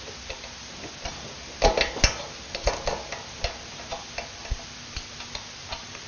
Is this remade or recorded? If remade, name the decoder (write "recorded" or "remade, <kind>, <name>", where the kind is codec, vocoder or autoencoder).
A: recorded